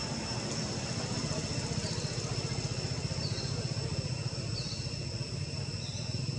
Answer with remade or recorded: recorded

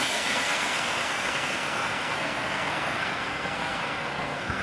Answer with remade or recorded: remade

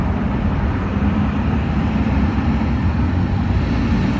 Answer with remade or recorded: recorded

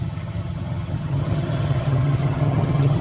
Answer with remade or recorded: remade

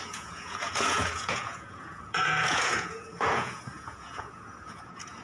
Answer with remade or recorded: remade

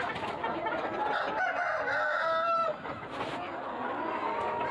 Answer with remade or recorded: recorded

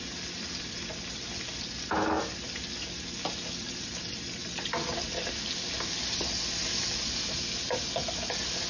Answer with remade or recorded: recorded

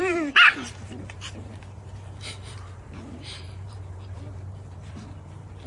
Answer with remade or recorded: remade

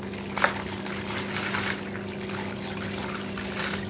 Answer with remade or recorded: recorded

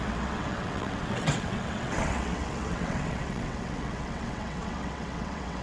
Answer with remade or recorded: remade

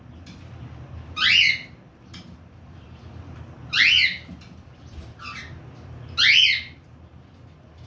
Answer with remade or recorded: recorded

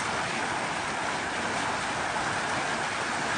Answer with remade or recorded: recorded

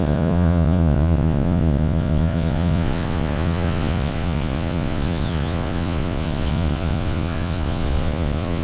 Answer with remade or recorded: remade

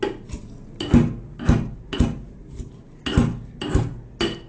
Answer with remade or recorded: recorded